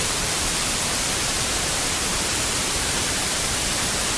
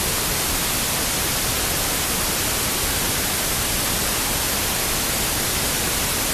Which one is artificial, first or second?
first